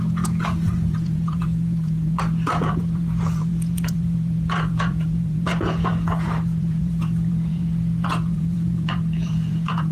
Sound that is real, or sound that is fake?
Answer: fake